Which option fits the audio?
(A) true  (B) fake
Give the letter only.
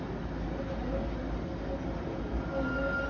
A